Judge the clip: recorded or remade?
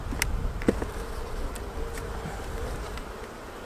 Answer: recorded